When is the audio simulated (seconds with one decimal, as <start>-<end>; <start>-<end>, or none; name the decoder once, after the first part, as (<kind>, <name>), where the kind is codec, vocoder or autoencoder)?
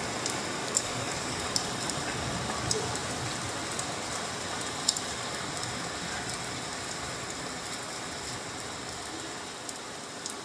0.6-1.4 (codec, DAC)